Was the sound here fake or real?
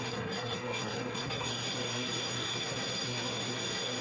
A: fake